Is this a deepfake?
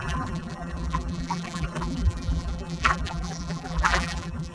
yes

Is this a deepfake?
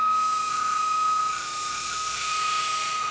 yes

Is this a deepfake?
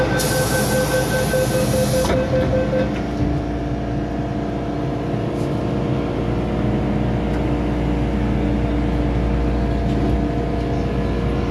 no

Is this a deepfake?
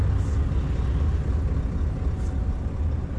no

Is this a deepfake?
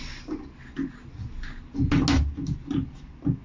no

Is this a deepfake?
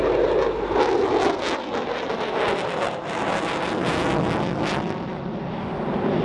no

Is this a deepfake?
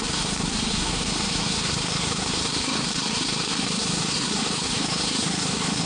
yes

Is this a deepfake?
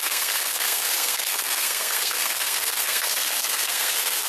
yes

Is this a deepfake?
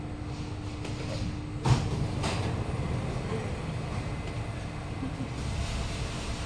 no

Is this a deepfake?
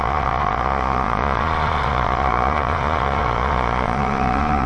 yes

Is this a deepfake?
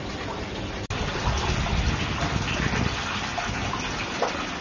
no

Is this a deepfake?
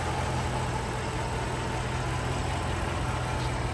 no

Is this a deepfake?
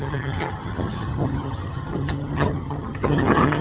yes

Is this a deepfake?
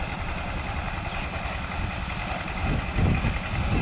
no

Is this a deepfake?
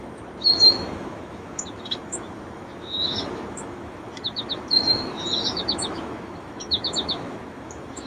yes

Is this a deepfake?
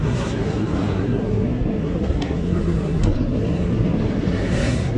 yes